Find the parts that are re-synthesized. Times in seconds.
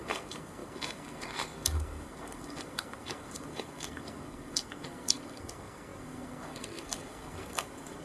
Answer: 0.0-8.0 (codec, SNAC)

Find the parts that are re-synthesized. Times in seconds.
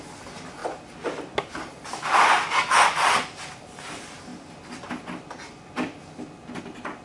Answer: none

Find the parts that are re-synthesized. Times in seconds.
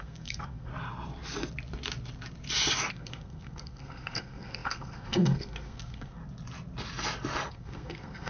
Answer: 0.0-0.7 (codec, SNAC); 2.9-6.2; 7.5-8.3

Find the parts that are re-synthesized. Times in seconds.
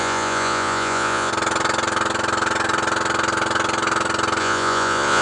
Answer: 0.0-1.3 (vocoder, Vocos); 4.4-5.2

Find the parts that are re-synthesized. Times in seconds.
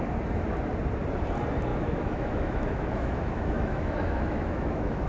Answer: 1.7-5.1 (autoencoder, DAC-VAE)